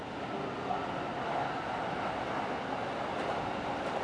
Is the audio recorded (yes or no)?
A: yes